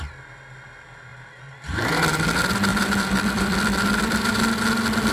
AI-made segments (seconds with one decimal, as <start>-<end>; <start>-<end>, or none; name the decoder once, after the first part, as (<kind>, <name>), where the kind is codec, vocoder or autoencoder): 2.7-4.3 (vocoder, BigVGAN v2)